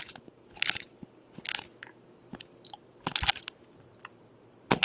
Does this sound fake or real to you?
real